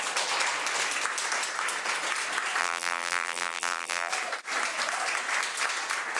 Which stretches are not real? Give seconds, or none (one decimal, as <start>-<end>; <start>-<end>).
2.6-4.1